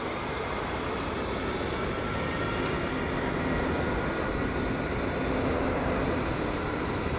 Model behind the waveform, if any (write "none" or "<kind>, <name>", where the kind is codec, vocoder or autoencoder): none